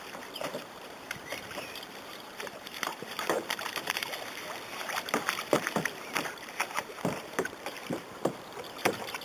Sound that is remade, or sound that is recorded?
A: remade